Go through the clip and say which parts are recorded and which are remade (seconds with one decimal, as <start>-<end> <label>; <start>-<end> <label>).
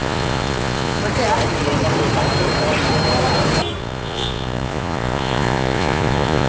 0.0-1.0 remade; 1.0-3.8 recorded; 3.8-6.5 remade